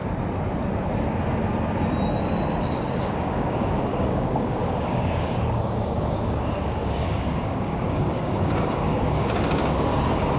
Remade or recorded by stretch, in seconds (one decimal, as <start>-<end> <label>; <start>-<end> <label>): 0.0-2.6 recorded; 2.6-10.4 remade